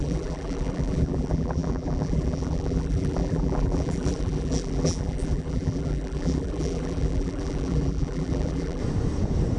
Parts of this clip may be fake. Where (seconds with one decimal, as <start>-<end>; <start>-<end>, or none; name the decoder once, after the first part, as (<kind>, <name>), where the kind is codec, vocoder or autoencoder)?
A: 0.0-8.8 (vocoder, BigVGAN v2)